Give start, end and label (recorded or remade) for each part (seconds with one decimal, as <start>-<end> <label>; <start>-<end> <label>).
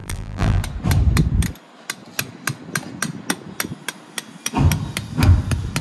0.0-0.6 remade; 0.6-5.8 recorded